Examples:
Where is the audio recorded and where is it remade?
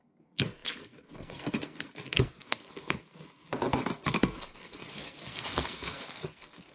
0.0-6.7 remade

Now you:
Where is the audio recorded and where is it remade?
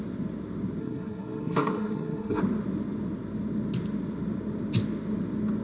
0.0-0.8 recorded; 0.8-2.4 remade; 2.4-5.6 recorded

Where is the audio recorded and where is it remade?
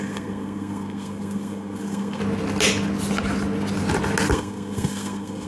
0.0-2.2 remade; 2.2-4.3 recorded; 4.3-5.5 remade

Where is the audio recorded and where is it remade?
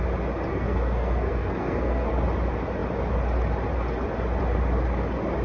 0.0-0.5 recorded; 0.5-2.1 remade; 2.1-5.4 recorded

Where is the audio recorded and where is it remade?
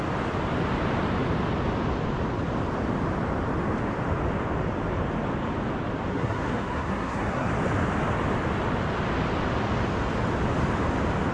0.0-6.1 recorded; 6.1-7.5 remade; 7.5-11.3 recorded